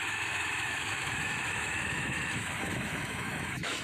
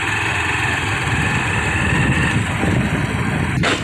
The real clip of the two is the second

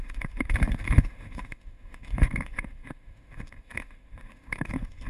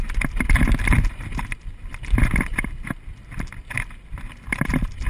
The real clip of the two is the second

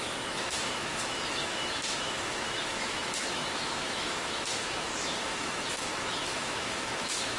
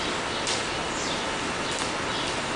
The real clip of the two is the second